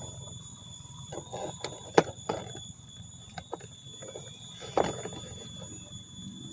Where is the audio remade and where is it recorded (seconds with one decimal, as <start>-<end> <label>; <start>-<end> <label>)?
0.0-0.5 recorded; 0.5-3.0 remade; 3.0-6.5 recorded